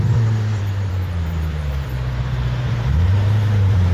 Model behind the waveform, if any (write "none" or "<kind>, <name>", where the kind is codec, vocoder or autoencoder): vocoder, BigVGAN v2